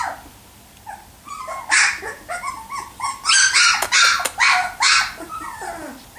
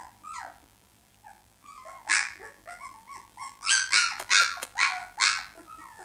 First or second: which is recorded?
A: first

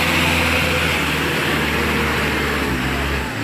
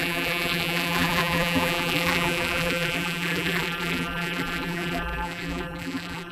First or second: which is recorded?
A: first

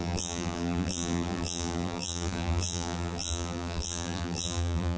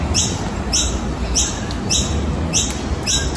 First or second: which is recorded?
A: second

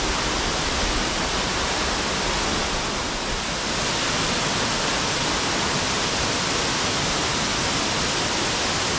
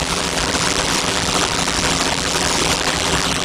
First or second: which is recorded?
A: first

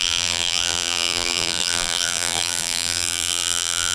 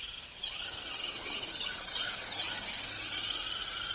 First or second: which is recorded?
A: second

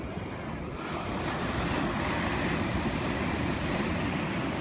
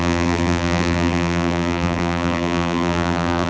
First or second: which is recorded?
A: first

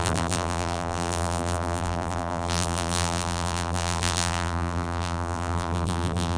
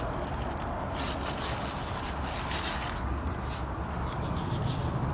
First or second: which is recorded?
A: second